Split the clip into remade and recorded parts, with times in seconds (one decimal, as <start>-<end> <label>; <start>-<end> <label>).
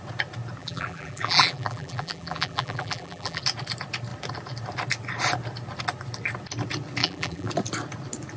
0.0-0.6 recorded; 0.6-3.4 remade; 3.4-7.0 recorded; 7.0-7.5 remade; 7.5-8.4 recorded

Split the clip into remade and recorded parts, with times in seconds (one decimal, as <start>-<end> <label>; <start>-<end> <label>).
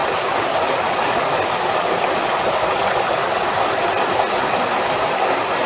0.0-5.7 recorded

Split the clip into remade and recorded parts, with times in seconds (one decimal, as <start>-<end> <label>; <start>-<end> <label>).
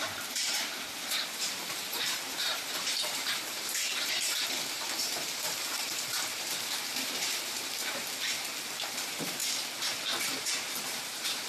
0.0-9.4 remade; 9.4-10.2 recorded; 10.2-11.5 remade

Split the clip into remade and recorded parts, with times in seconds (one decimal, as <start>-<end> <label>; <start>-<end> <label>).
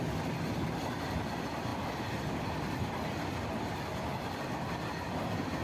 0.0-5.6 recorded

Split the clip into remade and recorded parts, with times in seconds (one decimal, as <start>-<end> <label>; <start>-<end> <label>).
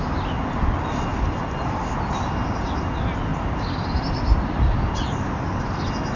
0.0-3.3 recorded; 3.3-5.7 remade; 5.7-6.2 recorded